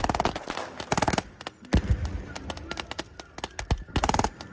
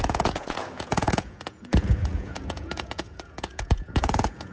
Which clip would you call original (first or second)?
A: first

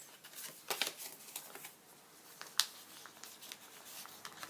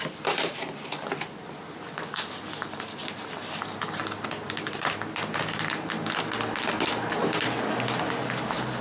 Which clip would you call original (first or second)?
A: first